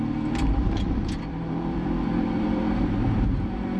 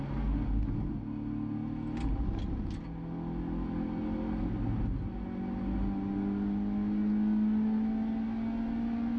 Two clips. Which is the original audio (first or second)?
second